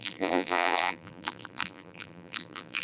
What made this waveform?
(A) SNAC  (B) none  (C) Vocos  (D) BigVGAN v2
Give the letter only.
D